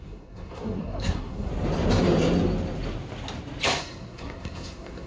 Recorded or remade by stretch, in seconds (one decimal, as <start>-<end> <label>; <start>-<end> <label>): 0.0-1.5 remade; 1.5-3.8 recorded; 3.8-5.1 remade

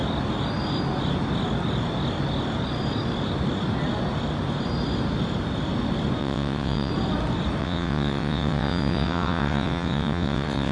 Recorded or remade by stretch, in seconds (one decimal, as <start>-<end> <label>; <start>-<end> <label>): 0.0-6.2 recorded; 6.2-6.9 remade; 6.9-7.6 recorded; 7.6-10.7 remade